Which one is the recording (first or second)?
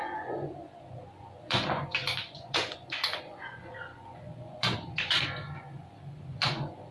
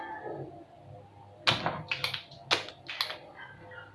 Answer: second